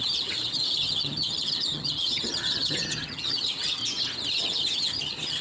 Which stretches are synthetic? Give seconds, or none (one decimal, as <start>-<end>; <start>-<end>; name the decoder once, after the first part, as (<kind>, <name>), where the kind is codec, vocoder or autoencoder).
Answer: 0.0-3.8 (vocoder, HiFi-GAN); 4.3-5.4

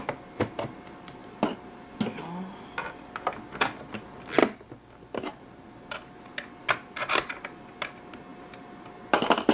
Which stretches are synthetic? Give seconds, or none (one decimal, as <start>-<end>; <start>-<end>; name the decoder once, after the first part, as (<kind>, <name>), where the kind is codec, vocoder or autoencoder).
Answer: none

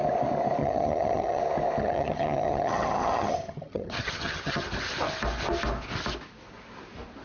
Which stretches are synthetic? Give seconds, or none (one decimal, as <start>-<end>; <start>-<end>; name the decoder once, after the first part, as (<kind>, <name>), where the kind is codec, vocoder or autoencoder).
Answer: 0.6-1.4 (vocoder, HiFi-GAN); 1.8-4.7

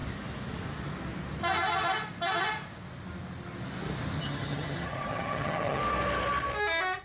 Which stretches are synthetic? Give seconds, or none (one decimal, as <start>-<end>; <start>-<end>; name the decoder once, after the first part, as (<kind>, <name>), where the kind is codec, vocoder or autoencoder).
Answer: 4.2-5.8 (vocoder, HiFi-GAN)

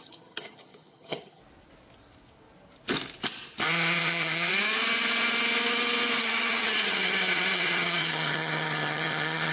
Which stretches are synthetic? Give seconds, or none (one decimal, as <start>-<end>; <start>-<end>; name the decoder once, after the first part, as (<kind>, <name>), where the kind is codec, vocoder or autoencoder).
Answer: 0.0-1.4 (vocoder, HiFi-GAN); 4.0-4.5; 6.2-9.5

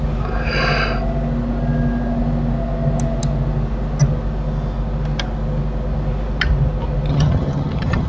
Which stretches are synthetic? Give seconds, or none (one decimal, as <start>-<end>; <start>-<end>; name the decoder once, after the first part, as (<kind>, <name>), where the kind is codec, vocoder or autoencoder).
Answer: 7.1-8.1 (vocoder, HiFi-GAN)